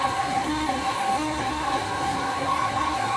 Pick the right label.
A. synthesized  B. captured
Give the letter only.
A